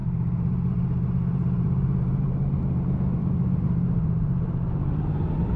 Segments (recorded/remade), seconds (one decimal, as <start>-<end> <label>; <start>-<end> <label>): 0.0-2.2 remade; 2.2-3.2 recorded; 3.2-5.6 remade